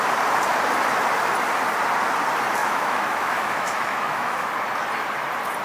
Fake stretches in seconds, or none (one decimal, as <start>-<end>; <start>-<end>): 2.6-4.5